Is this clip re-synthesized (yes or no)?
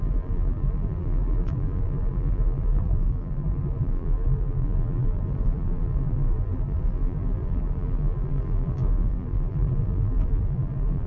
yes